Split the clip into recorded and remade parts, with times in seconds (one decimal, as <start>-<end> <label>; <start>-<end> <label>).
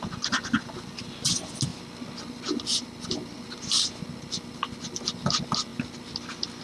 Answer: 0.0-6.6 recorded